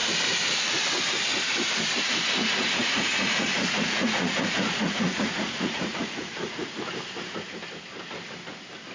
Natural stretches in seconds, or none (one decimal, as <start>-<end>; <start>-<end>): 0.0-2.4; 6.9-8.9